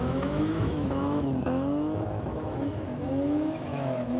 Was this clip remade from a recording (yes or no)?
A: yes